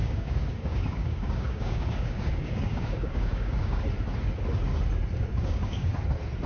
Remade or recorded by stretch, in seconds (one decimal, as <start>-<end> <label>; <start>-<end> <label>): 0.0-3.8 remade; 3.8-5.3 recorded; 5.3-5.9 remade; 5.9-6.5 recorded